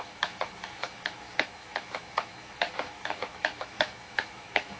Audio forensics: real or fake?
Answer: fake